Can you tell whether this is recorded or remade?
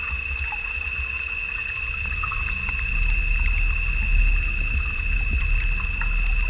recorded